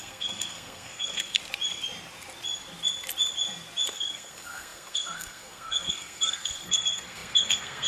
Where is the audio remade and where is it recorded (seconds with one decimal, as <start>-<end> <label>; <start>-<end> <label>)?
0.0-1.4 remade; 1.4-3.9 recorded; 3.9-7.9 remade